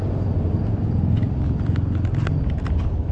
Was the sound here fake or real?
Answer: real